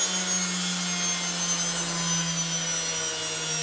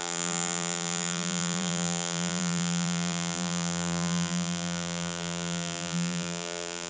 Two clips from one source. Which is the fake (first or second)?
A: second